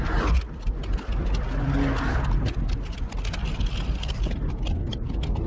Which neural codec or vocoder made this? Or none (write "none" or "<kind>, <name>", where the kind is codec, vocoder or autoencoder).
none